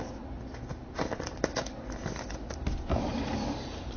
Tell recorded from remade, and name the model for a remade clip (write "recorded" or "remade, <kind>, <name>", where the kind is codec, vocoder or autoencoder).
recorded